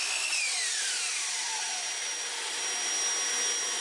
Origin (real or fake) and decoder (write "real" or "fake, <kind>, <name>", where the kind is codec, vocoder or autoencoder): real